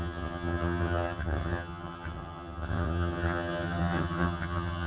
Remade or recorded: remade